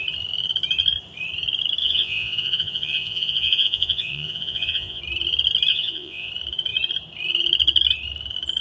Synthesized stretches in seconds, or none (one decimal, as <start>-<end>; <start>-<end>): 1.8-5.0; 5.7-6.3